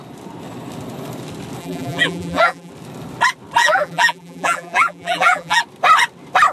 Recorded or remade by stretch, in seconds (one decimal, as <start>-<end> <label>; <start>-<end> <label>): 0.0-1.6 recorded; 1.6-2.7 remade; 2.7-3.6 recorded; 3.6-5.6 remade; 5.6-6.5 recorded